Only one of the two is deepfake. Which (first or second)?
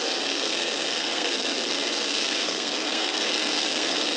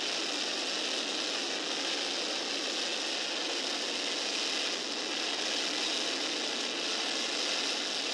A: first